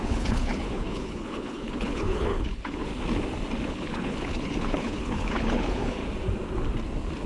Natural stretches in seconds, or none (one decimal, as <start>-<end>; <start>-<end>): 2.9-3.7; 6.0-7.3

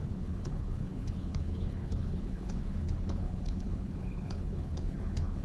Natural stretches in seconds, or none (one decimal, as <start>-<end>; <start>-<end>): none

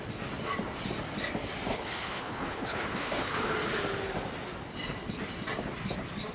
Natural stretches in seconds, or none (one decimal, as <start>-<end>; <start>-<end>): 0.0-1.7; 3.5-6.3

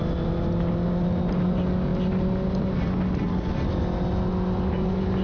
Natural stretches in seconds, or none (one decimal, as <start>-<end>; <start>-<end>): 0.0-5.2

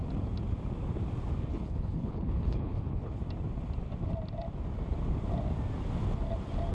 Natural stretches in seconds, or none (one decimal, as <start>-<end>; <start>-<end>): 0.0-1.5; 3.2-6.7

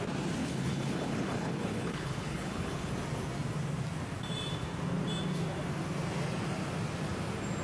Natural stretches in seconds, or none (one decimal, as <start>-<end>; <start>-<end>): 0.0-0.4; 2.9-7.6